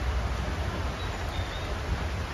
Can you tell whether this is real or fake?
real